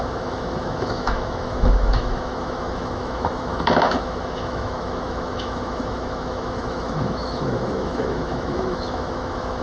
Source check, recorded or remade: remade